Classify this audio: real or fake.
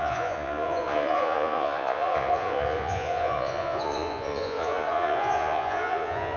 fake